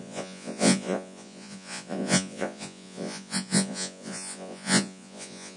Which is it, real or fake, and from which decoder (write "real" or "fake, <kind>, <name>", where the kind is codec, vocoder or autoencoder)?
fake, vocoder, Vocos